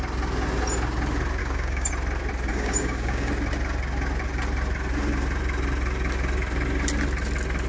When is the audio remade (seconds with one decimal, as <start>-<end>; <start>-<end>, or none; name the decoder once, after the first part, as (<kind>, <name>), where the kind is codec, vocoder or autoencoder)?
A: 1.4-1.9 (codec, DAC); 2.5-3.3

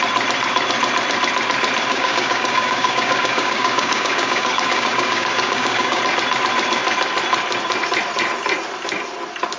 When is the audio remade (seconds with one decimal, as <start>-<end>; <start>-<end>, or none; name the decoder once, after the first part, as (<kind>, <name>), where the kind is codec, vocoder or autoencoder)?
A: 1.9-6.0 (codec, DAC)